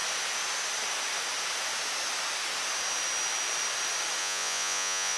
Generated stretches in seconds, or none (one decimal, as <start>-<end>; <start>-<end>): 4.2-5.2